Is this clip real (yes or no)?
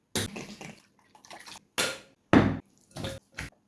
yes